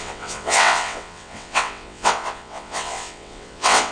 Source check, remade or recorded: remade